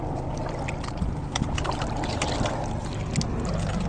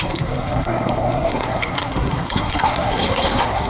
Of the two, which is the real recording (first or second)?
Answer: first